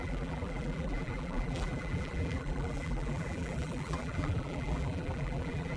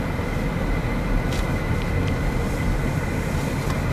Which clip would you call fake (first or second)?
first